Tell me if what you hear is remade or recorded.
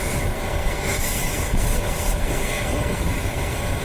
remade